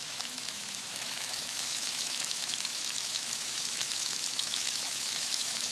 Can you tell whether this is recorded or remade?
remade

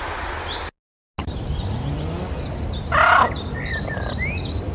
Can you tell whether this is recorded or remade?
recorded